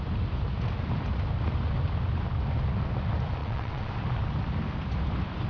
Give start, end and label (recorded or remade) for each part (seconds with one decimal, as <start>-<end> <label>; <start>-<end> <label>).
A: 0.0-3.4 recorded; 3.4-3.9 remade; 3.9-5.5 recorded